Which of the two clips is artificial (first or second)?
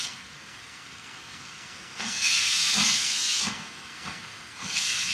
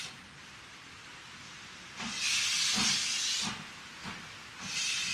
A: first